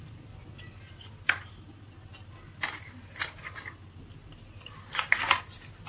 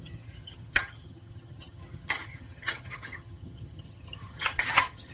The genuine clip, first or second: first